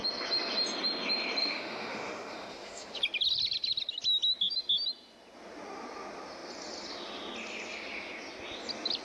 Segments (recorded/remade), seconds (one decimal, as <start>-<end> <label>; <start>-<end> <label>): 0.0-1.4 recorded; 1.4-3.0 remade; 3.0-9.0 recorded